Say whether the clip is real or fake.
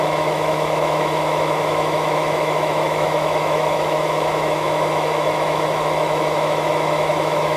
fake